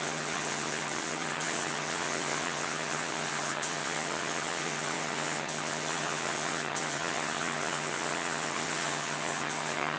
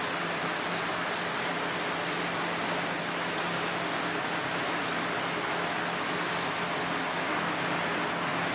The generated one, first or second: first